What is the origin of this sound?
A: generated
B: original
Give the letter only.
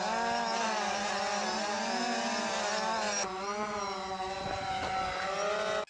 B